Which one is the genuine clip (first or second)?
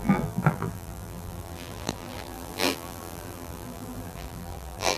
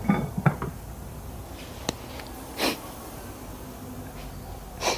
second